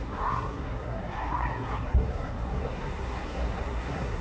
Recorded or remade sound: remade